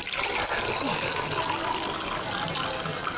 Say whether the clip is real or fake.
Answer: real